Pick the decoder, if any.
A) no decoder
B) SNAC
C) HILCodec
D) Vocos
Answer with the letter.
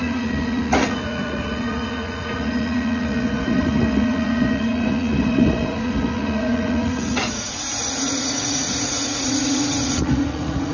D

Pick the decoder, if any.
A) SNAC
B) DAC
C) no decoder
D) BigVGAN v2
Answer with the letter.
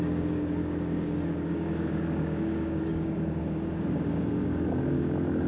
B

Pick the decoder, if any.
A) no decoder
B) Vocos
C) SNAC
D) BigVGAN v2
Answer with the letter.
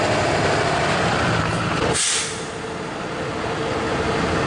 A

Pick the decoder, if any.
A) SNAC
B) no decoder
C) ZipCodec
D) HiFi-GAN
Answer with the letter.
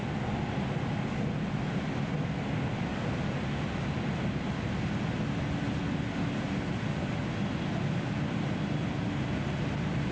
B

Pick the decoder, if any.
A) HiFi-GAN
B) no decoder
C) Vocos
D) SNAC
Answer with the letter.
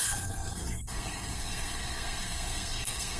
D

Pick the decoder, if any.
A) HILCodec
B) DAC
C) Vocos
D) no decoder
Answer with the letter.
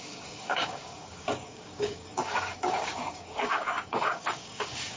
B